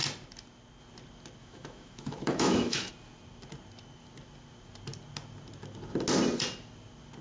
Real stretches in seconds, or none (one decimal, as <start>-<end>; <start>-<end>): 0.0-1.4; 2.9-7.2